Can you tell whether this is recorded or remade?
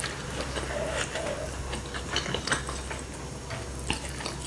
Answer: recorded